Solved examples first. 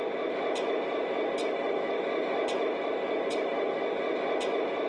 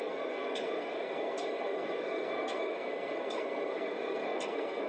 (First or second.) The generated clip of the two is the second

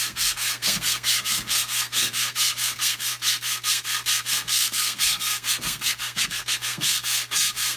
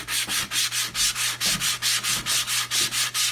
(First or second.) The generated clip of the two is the first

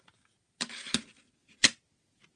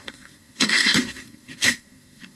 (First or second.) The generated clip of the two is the second